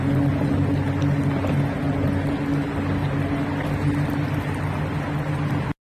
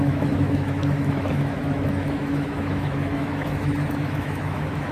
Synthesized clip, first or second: second